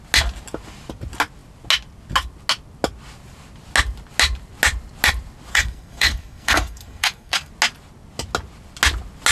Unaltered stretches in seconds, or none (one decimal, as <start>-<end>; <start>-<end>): 0.0-5.5; 7.5-9.3